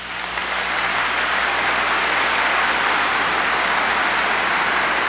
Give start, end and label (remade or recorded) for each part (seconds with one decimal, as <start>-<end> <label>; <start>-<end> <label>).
0.0-0.4 recorded; 0.4-3.5 remade; 3.5-5.1 recorded